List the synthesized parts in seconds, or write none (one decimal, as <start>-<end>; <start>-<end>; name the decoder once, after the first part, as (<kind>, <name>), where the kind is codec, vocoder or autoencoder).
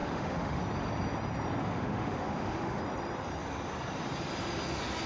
0.0-0.6 (autoencoder, DAC-VAE); 1.6-2.8